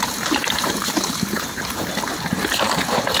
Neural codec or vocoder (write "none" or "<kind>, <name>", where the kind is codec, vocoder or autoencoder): vocoder, BigVGAN v2